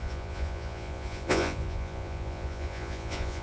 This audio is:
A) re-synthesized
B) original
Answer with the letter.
A